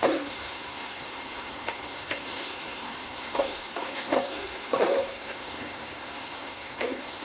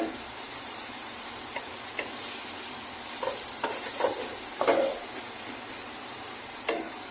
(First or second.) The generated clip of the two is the first